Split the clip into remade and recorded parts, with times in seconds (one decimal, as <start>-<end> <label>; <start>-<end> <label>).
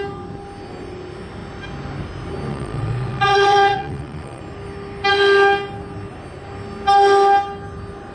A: 0.0-2.5 recorded; 2.5-4.4 remade; 4.4-8.1 recorded